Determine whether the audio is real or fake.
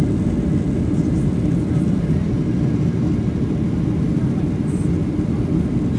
real